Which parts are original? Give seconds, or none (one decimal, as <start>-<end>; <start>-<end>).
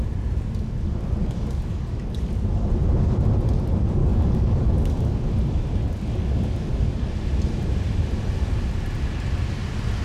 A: 0.0-1.2; 2.3-4.0; 5.3-5.8; 7.1-10.0